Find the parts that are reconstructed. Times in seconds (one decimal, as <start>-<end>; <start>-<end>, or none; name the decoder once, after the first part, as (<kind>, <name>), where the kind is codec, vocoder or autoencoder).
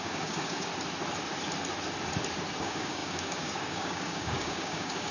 0.0-0.7 (codec, DAC); 2.6-5.1